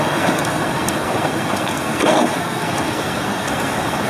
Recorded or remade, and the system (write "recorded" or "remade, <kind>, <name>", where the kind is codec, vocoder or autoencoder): remade, codec, SNAC